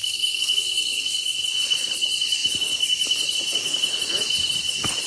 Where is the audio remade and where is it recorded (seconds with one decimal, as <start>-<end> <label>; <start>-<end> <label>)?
0.0-1.5 remade; 1.5-5.1 recorded